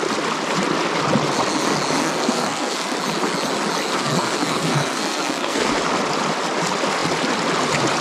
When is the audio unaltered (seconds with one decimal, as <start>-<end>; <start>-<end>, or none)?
0.0-2.0; 3.0-3.9; 5.7-8.0